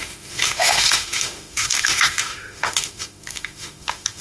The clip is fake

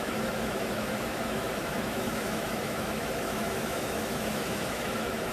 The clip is fake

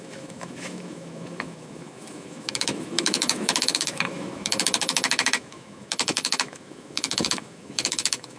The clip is fake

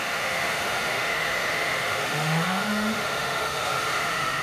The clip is fake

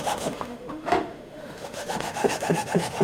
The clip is fake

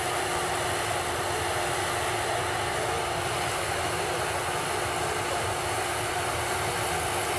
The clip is real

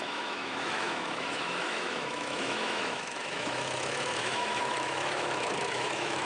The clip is fake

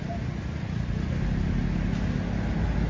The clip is real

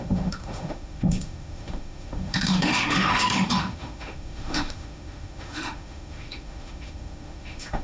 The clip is fake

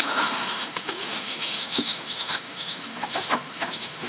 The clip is fake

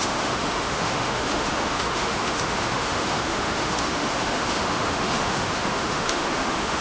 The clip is fake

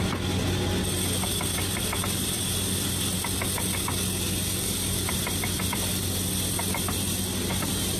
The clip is real